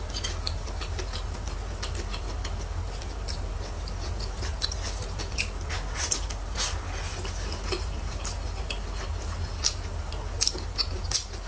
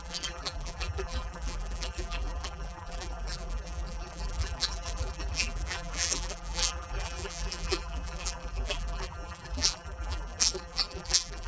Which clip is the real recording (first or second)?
first